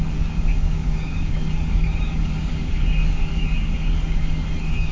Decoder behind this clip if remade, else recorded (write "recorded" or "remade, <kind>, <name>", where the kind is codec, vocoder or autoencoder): remade, codec, DAC